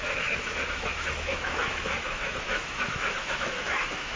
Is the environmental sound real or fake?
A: fake